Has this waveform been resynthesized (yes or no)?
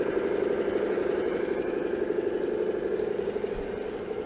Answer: no